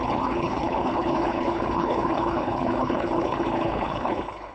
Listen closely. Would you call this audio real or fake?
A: fake